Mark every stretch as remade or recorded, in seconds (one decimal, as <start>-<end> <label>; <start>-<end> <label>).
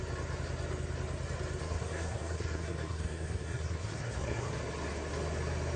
0.0-1.6 recorded; 1.6-4.5 remade; 4.5-5.8 recorded